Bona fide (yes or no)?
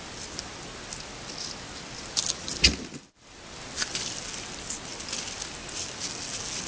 yes